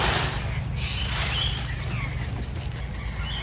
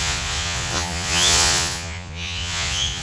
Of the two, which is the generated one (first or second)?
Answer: second